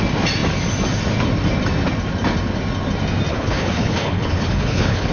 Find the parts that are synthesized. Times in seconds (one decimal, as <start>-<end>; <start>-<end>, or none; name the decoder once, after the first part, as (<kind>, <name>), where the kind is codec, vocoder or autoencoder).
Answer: 3.3-5.1 (codec, HILCodec)